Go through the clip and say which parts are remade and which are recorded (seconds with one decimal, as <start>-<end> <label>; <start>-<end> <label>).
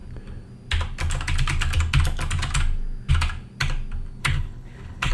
0.0-4.2 recorded; 4.2-5.1 remade